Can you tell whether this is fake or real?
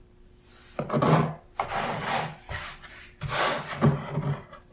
real